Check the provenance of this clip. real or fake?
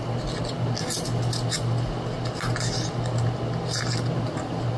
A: real